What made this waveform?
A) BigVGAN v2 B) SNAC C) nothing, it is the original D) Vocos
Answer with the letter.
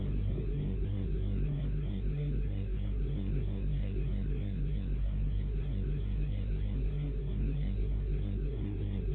B